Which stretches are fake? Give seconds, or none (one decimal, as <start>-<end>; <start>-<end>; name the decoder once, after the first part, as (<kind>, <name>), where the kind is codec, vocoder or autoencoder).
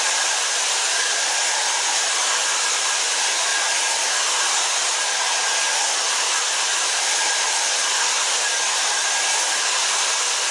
0.0-3.5 (vocoder, BigVGAN v2); 5.8-10.5